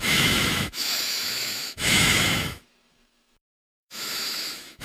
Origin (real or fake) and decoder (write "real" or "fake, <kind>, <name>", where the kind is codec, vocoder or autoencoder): fake, autoencoder, DAC-VAE